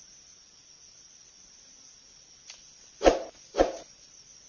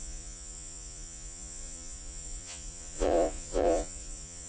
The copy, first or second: second